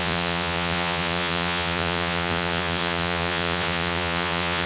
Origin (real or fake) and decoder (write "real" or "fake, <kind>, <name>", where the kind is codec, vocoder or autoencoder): fake, vocoder, Vocos